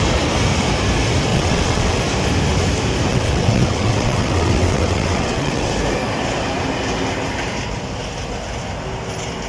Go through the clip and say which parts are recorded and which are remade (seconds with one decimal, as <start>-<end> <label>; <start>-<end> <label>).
0.0-1.3 recorded; 1.3-2.0 remade; 2.0-3.1 recorded; 3.1-5.7 remade; 5.7-9.5 recorded